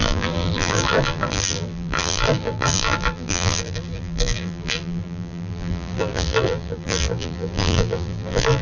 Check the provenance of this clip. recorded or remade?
remade